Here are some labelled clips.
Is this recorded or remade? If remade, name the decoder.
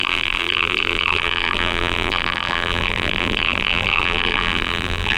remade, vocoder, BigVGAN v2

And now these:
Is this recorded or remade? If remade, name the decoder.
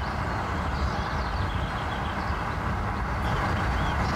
recorded